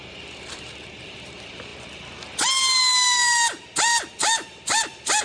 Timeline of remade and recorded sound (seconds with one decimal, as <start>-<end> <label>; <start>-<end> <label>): 0.0-5.2 recorded